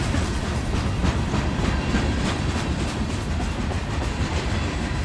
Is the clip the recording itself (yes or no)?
no